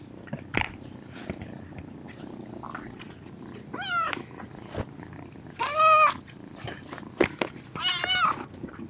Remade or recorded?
recorded